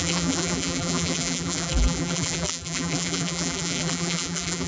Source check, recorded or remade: remade